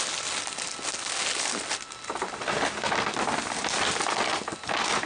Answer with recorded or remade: recorded